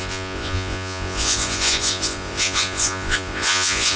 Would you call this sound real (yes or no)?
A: no